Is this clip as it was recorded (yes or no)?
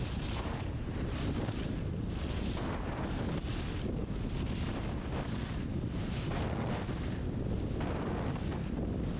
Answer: yes